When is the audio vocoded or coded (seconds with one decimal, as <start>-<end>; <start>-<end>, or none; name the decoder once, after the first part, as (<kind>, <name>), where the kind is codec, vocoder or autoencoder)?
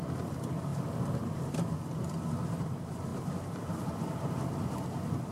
0.7-1.7 (vocoder, BigVGAN v2); 3.1-4.7